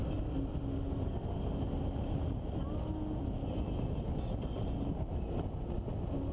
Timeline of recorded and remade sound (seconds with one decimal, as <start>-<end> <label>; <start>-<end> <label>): 0.0-6.3 recorded